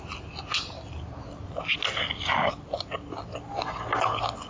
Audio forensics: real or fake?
real